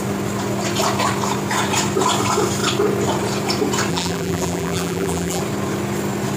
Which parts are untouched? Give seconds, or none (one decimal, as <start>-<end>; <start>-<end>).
0.0-3.9; 5.4-6.4